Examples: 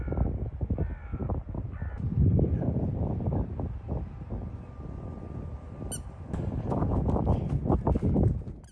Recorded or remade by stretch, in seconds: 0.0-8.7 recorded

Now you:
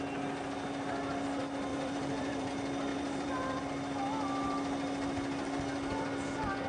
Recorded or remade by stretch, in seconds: 0.0-1.7 recorded; 1.7-2.5 remade; 2.5-2.9 recorded; 2.9-3.6 remade; 3.6-6.7 recorded

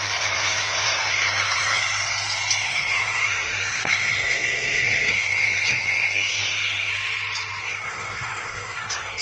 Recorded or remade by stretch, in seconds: 0.0-1.8 remade; 1.8-2.6 recorded; 2.6-6.9 remade; 6.9-7.6 recorded; 7.6-9.2 remade

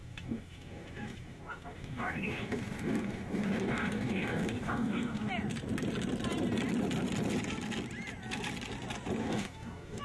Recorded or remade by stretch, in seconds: 0.0-5.3 remade; 5.3-9.2 recorded; 9.2-10.0 remade

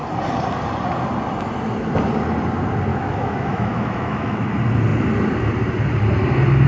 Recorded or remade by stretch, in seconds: 0.0-2.9 recorded; 2.9-4.5 remade; 4.5-6.7 recorded

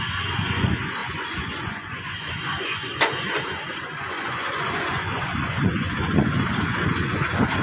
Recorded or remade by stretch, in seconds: 0.0-7.6 remade